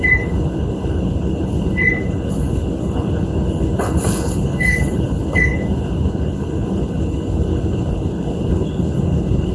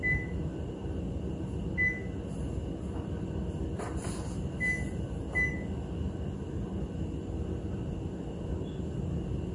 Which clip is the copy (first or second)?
first